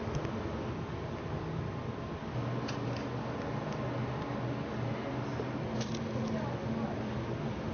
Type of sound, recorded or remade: recorded